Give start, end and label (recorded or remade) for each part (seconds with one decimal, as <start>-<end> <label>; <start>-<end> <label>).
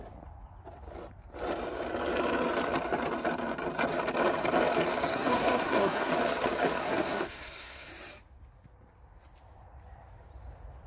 0.0-5.1 recorded; 5.1-6.1 remade; 6.1-6.8 recorded; 6.8-7.9 remade; 7.9-10.9 recorded